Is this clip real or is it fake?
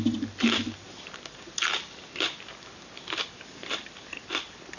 real